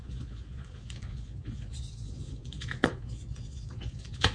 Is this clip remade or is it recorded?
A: remade